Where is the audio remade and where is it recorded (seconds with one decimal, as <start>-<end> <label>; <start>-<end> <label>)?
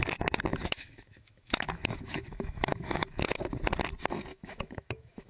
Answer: 0.0-0.5 recorded; 0.5-3.4 remade; 3.4-4.3 recorded; 4.3-5.3 remade